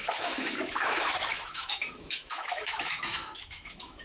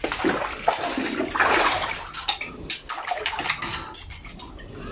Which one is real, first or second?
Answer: second